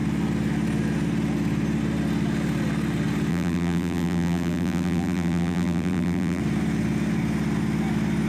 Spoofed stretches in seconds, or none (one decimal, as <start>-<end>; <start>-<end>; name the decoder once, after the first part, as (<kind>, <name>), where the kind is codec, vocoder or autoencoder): 3.3-6.4 (vocoder, BigVGAN v2)